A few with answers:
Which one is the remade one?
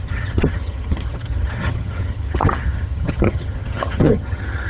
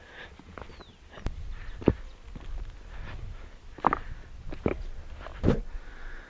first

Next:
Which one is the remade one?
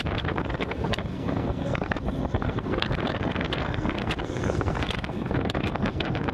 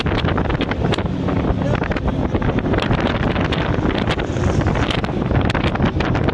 first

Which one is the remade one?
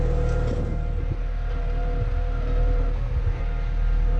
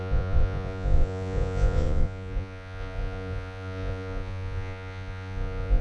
second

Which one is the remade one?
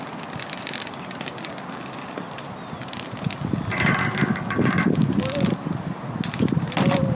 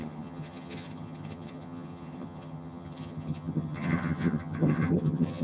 second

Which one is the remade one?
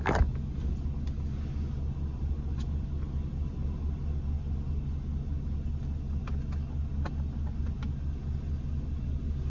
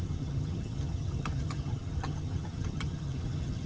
second